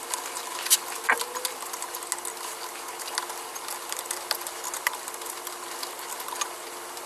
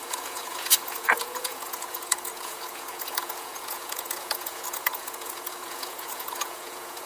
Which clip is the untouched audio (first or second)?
first